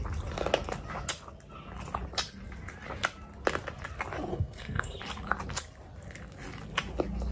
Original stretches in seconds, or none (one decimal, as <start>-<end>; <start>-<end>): 0.0-4.3; 5.0-7.3